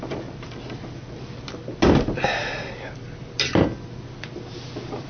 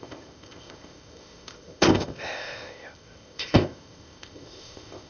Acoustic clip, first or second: first